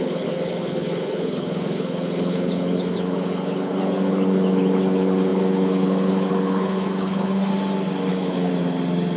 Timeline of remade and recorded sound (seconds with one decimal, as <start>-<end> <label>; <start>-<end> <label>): 0.0-7.5 remade; 7.5-8.1 recorded; 8.1-8.5 remade; 8.5-9.2 recorded